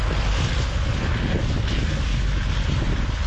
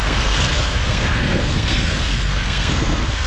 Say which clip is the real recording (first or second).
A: first